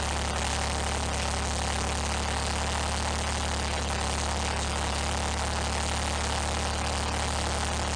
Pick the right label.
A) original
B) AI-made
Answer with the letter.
A